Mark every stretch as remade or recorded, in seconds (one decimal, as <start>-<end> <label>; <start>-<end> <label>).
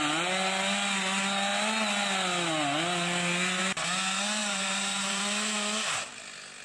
0.0-4.4 recorded; 4.4-5.2 remade; 5.2-6.6 recorded